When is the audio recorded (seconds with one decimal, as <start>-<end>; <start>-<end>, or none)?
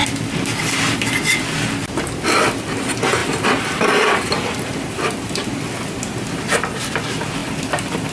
0.0-3.2; 5.5-7.4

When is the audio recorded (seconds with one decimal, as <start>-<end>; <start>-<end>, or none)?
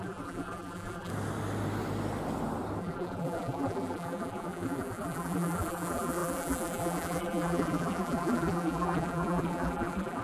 1.1-2.8